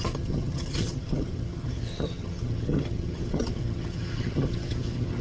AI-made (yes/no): yes